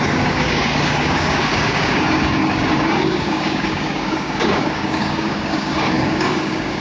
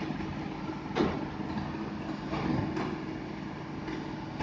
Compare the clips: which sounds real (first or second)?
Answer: second